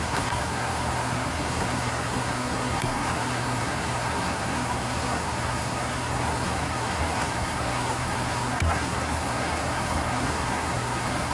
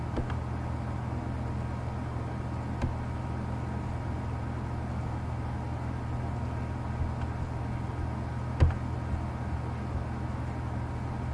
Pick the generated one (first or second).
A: first